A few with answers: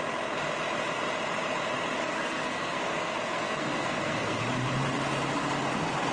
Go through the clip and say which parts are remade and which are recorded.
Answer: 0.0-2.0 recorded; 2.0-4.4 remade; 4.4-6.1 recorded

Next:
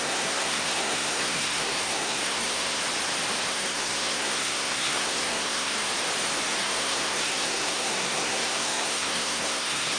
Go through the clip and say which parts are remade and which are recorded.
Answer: 0.0-2.8 remade; 2.8-3.5 recorded; 3.5-5.9 remade; 5.9-6.6 recorded; 6.6-10.0 remade

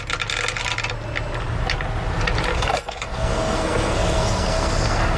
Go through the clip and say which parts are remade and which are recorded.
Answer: 0.0-2.5 recorded; 2.5-5.2 remade

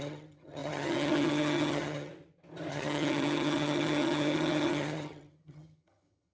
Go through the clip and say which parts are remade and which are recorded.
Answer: 0.0-2.1 remade; 2.1-2.7 recorded; 2.7-6.3 remade